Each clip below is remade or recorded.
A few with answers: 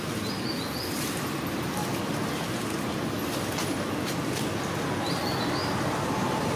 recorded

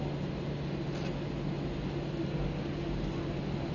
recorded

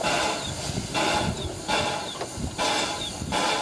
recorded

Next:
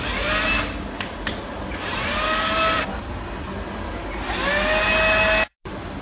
recorded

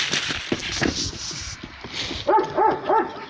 recorded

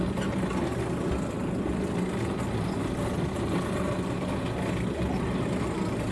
recorded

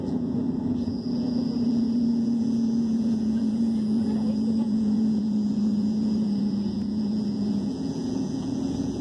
remade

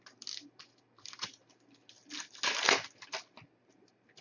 recorded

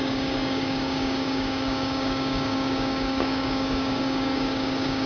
remade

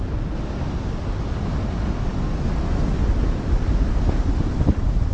recorded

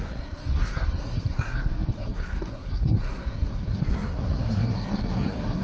remade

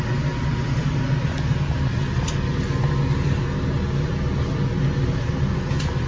recorded